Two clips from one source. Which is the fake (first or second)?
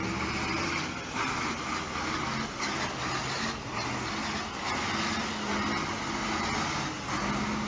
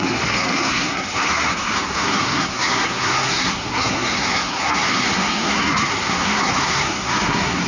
second